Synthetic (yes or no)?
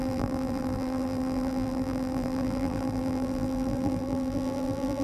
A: yes